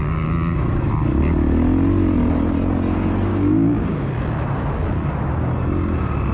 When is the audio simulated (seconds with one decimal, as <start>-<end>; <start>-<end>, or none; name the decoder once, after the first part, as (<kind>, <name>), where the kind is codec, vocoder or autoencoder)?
3.3-4.1 (codec, DAC)